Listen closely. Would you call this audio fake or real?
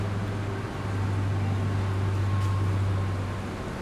real